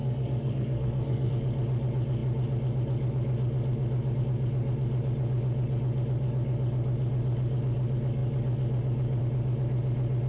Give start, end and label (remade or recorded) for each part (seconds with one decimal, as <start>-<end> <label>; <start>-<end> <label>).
0.0-1.3 remade; 1.3-10.3 recorded